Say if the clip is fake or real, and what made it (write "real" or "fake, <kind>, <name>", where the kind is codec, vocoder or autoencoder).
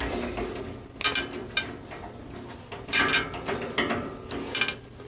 real